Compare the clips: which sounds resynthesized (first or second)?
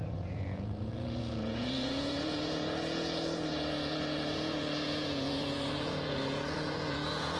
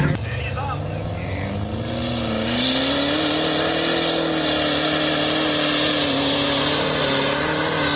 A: first